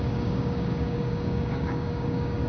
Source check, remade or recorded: remade